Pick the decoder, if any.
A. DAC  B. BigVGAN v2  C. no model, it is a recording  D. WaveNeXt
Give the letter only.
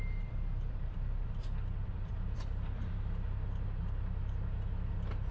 B